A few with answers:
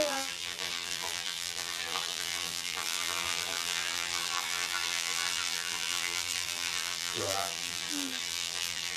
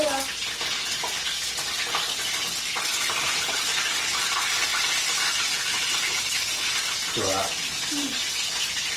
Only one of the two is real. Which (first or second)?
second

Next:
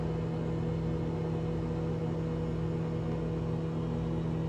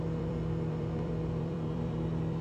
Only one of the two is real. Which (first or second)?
first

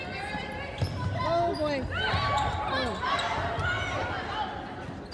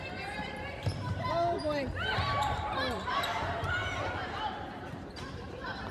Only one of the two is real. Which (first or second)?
first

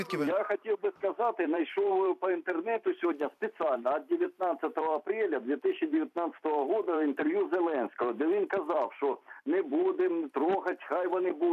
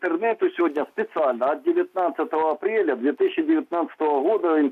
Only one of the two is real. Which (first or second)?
second